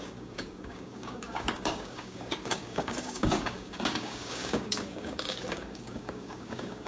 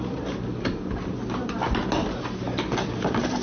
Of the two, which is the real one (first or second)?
second